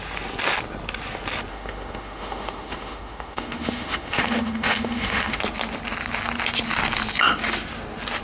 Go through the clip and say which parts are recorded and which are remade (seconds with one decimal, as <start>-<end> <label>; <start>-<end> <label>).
0.0-1.5 recorded; 1.5-5.4 remade; 5.4-8.2 recorded